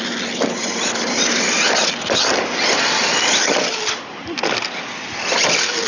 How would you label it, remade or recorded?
recorded